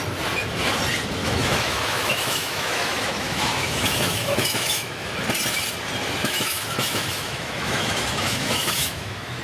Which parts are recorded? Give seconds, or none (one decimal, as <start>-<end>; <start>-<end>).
0.0-1.2; 5.1-6.2

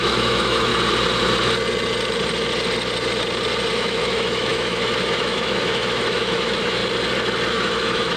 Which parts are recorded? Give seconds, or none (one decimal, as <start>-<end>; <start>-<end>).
0.7-3.7; 6.8-7.5